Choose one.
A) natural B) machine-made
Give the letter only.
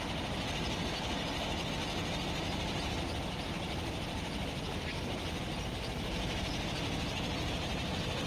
A